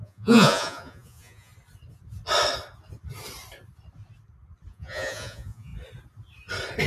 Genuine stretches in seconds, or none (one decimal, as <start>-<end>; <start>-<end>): 1.5-4.7; 5.7-6.9